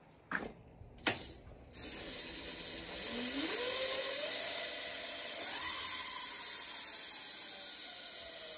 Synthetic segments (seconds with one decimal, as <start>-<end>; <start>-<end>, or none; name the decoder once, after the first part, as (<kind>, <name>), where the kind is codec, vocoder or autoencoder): none